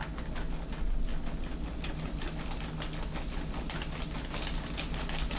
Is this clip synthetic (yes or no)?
no